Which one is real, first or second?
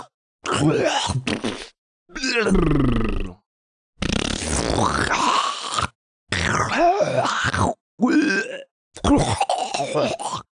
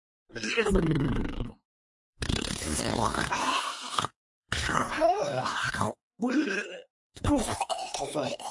first